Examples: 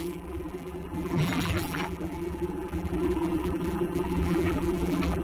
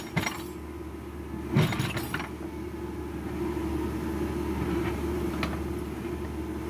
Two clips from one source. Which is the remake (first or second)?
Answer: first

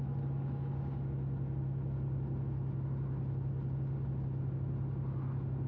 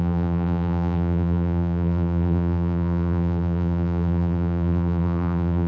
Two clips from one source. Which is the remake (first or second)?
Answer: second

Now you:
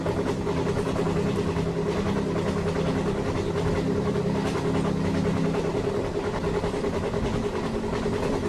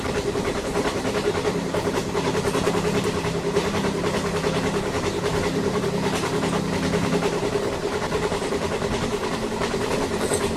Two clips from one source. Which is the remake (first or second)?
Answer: second